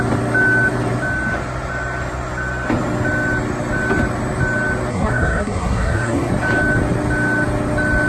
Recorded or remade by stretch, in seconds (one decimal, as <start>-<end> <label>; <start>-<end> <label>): 0.0-4.9 recorded; 4.9-6.3 remade; 6.3-8.1 recorded